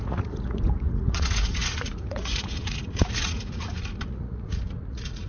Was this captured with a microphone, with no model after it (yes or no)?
no